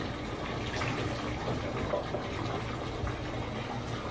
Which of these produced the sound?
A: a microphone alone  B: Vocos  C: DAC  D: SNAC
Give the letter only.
A